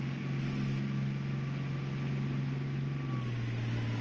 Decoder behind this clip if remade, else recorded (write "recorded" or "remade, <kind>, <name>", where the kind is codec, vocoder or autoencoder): recorded